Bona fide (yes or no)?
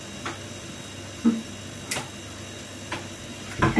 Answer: yes